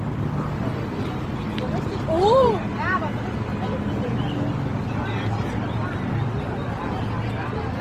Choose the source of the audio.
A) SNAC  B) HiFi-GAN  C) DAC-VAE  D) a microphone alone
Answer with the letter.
D